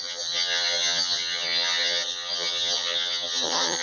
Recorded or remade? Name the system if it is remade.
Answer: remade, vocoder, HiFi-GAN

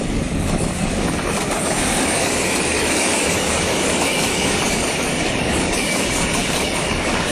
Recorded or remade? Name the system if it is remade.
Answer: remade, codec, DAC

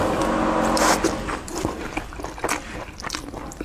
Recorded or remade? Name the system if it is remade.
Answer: recorded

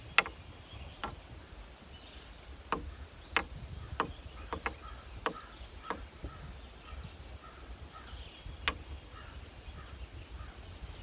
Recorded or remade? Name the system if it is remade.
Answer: recorded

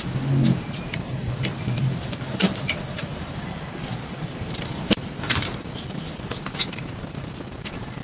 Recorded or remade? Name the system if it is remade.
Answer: remade, vocoder, BigVGAN v2